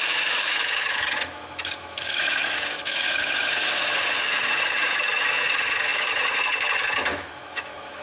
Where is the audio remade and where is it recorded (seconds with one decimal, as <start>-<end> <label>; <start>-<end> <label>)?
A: 0.0-8.0 remade